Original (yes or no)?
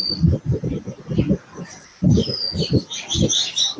yes